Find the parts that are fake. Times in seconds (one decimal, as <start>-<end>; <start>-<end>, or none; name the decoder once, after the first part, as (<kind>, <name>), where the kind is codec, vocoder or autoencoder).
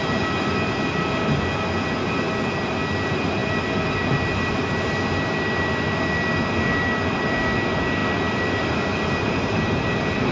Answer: none